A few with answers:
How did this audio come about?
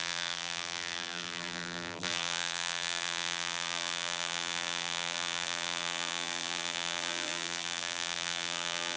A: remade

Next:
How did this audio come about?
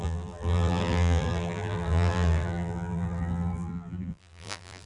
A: remade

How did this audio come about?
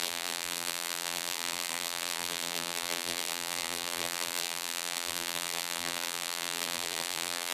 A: remade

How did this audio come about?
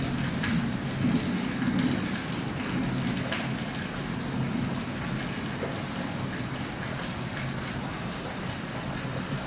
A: recorded